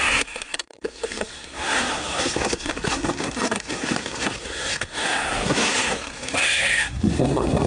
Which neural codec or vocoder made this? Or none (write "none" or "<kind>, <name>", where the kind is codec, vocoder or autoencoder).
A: codec, SNAC